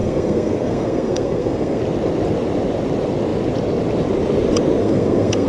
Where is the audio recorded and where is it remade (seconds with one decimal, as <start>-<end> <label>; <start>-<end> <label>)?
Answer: 0.0-1.8 remade; 1.8-4.8 recorded; 4.8-5.5 remade